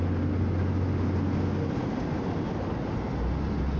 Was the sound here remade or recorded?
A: recorded